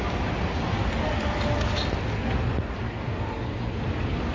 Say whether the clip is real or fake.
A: real